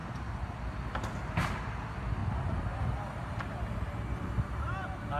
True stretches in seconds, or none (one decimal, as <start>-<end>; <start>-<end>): 0.6-5.2